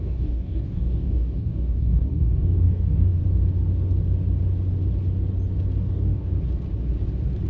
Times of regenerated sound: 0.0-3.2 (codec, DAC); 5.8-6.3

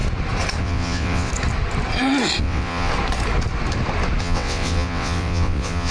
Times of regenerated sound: 0.6-1.3 (vocoder, WaveNeXt); 2.4-2.9; 4.2-5.9

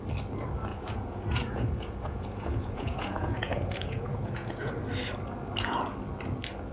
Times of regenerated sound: 0.7-4.7 (vocoder, Vocos)

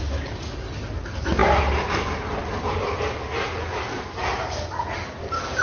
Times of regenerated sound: none